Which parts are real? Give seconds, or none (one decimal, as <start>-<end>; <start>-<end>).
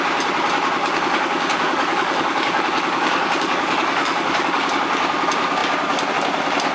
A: 0.0-0.8; 4.7-6.7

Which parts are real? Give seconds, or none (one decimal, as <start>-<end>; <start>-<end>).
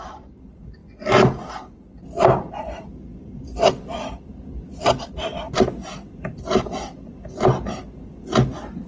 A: 0.0-8.9